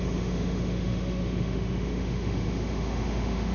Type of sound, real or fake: fake